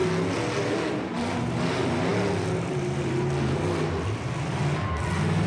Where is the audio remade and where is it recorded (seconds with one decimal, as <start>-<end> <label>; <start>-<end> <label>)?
0.0-5.5 recorded

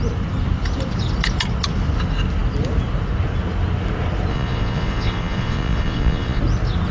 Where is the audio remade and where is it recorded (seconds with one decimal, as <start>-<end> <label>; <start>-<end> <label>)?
0.0-4.3 recorded; 4.3-6.4 remade; 6.4-6.9 recorded